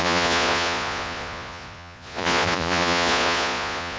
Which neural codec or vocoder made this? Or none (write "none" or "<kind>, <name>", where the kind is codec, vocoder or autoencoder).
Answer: vocoder, Vocos